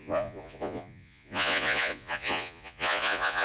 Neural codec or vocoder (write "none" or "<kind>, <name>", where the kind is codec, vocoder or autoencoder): vocoder, Vocos